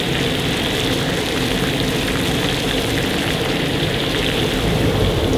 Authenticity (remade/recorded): remade